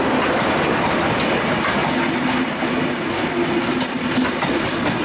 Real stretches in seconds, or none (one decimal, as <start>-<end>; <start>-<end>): 0.0-5.0